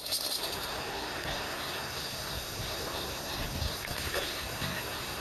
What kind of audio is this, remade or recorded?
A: remade